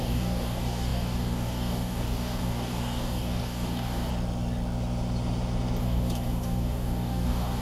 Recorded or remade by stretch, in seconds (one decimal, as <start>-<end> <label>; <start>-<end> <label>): 0.0-4.1 remade; 4.1-5.8 recorded; 5.8-7.6 remade